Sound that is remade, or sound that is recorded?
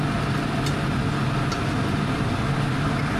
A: recorded